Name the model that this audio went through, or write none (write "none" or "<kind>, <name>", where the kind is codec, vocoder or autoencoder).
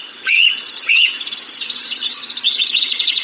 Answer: vocoder, Vocos